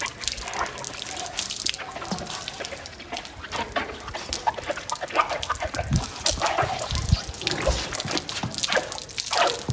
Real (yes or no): yes